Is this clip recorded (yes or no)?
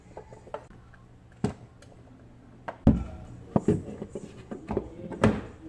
yes